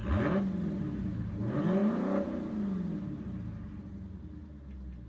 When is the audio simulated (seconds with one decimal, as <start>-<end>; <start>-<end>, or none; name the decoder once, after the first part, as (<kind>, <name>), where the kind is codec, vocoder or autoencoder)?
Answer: none